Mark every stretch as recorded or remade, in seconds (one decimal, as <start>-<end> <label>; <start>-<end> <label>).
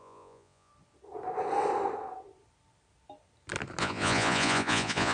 0.0-0.7 remade; 0.7-3.8 recorded; 3.8-5.1 remade